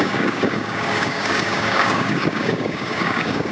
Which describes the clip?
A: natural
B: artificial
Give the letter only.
B